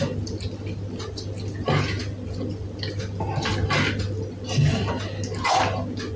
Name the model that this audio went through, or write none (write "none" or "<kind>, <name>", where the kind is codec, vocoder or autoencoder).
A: none